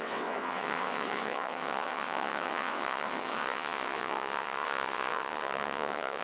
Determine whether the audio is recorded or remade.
remade